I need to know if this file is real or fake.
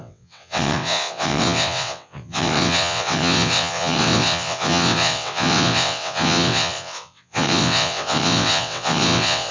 fake